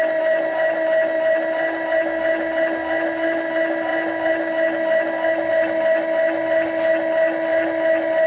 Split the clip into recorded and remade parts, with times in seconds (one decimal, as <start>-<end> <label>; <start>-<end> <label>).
0.0-8.3 recorded